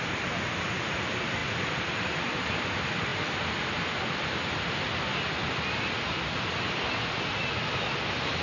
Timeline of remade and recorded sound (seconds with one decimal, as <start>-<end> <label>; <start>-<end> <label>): 0.0-8.4 recorded